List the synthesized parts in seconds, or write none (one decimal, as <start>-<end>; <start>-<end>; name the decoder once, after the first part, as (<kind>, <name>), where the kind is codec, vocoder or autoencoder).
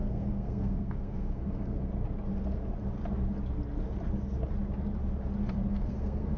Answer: 0.0-1.9 (codec, SNAC); 5.7-6.4